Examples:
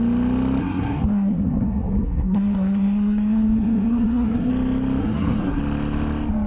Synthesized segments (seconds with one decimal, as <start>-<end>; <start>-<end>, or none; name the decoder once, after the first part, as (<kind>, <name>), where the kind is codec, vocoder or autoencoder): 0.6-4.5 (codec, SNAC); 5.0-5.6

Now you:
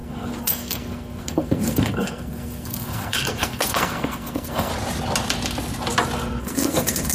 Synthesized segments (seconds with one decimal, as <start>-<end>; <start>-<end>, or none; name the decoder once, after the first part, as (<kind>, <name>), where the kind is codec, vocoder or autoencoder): 0.0-4.7 (codec, SNAC); 6.4-7.1

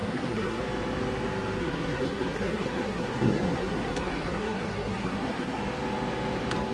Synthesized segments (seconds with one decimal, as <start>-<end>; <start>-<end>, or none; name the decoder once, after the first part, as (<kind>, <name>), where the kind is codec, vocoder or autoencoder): 0.0-0.6 (codec, SNAC); 1.6-5.6